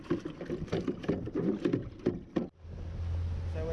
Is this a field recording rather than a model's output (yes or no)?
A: yes